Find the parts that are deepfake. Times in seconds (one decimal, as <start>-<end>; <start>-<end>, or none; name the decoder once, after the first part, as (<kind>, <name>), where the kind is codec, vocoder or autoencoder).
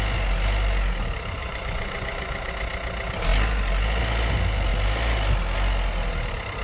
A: 1.4-2.5 (vocoder, Vocos)